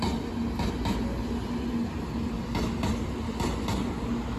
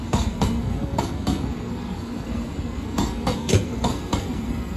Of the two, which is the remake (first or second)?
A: second